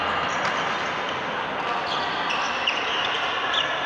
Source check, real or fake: real